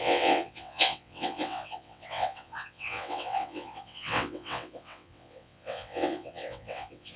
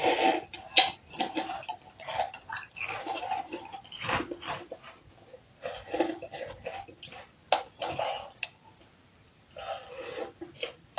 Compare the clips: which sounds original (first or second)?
second